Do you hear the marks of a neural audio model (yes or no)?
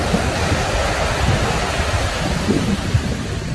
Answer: no